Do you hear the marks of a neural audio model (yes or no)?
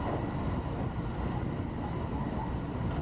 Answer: no